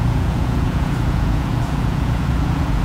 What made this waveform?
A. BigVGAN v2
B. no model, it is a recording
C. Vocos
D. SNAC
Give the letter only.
C